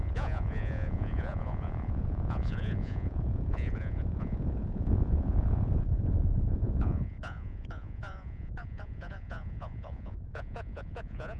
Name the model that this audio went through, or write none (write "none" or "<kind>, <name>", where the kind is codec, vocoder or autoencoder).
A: vocoder, Vocos